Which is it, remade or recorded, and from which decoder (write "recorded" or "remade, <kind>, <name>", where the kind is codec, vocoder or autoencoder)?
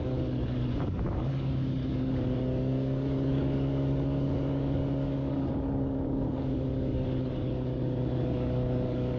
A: remade, codec, DAC